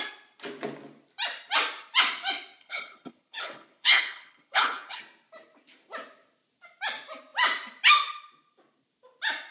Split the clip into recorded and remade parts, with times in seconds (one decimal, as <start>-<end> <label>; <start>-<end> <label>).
0.0-2.6 recorded; 2.6-5.0 remade; 5.0-9.5 recorded